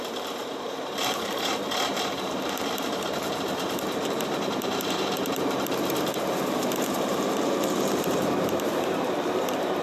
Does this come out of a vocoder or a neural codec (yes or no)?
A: yes